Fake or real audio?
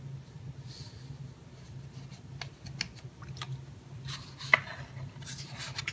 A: real